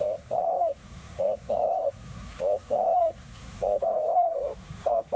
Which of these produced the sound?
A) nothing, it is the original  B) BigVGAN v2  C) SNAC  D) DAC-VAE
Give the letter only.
C